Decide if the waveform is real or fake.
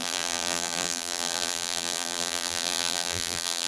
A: fake